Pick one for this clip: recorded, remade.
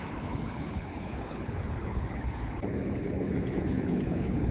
remade